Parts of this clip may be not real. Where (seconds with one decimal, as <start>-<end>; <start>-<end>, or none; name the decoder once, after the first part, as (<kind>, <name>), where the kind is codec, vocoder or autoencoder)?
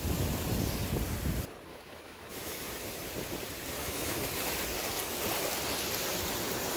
1.7-2.6 (autoencoder, DAC-VAE); 3.8-4.3